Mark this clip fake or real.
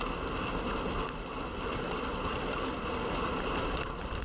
real